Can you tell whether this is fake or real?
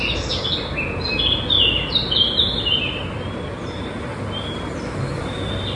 real